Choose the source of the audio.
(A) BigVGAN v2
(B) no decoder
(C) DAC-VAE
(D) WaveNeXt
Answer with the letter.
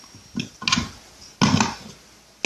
B